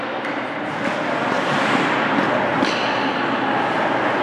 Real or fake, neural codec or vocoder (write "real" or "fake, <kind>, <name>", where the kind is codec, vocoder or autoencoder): real